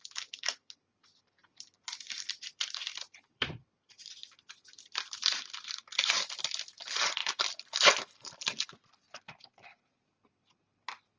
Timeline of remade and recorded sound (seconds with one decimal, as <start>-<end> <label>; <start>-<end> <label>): 0.0-11.2 remade